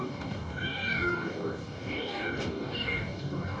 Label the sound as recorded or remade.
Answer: remade